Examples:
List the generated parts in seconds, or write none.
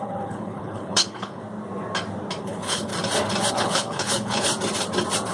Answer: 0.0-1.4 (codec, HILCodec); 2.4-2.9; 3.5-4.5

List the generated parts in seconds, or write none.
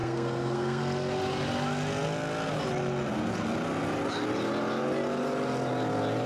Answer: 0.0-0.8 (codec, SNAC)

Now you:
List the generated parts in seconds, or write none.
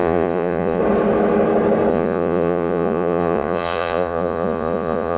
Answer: 0.0-0.8 (vocoder, Vocos); 1.9-5.2